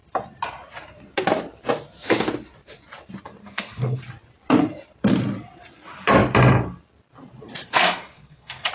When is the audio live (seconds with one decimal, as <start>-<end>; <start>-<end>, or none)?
0.0-3.4; 4.0-7.6